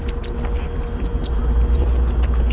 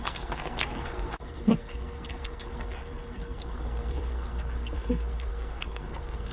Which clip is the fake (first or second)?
second